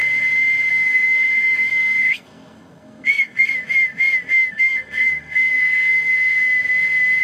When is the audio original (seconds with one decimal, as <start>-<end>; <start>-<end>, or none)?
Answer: 0.0-0.7; 3.5-4.5; 6.5-7.2